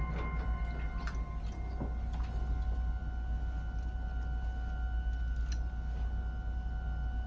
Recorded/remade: recorded